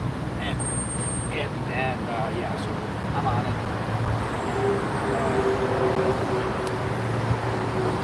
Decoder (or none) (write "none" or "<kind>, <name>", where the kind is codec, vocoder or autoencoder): none